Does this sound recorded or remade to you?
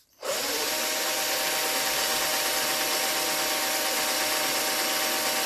recorded